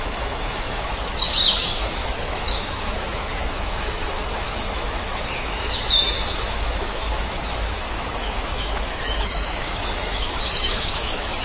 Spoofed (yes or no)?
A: yes